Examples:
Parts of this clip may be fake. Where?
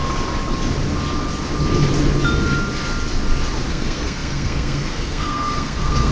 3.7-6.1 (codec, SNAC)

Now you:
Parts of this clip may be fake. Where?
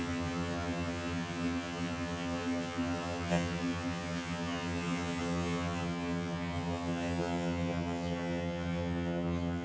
0.0-9.6 (vocoder, HiFi-GAN)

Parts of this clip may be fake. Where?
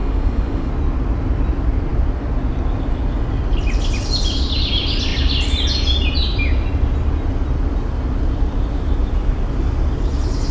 0.0-0.7 (autoencoder, DAC-VAE)